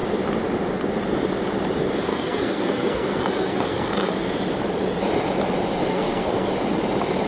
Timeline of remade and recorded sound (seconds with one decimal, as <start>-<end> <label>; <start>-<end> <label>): 0.0-2.1 recorded; 2.1-4.2 remade; 4.2-5.9 recorded; 5.9-6.5 remade; 6.5-7.3 recorded